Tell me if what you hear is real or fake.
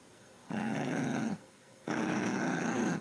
fake